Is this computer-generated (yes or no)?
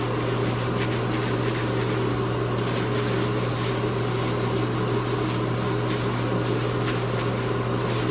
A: no